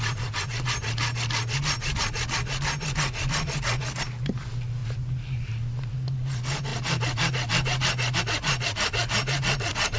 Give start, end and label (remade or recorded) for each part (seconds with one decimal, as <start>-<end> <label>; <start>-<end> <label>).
0.0-10.0 recorded